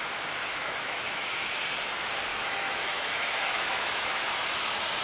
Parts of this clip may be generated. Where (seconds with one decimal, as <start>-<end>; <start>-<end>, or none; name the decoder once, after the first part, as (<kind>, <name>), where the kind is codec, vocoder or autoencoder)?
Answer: 0.4-1.5 (autoencoder, DAC-VAE); 2.3-4.3